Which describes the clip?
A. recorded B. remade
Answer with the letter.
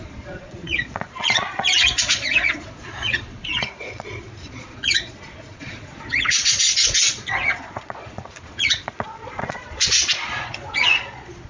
B